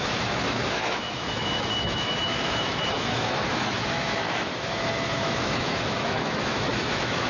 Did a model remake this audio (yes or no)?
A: yes